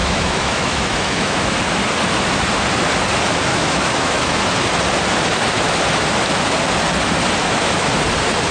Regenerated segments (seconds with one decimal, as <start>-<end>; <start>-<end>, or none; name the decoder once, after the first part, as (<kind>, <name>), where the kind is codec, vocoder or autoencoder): 0.0-1.6 (autoencoder, DAC-VAE); 3.5-4.4; 7.4-7.9